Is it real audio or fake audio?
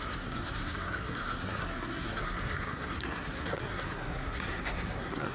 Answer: fake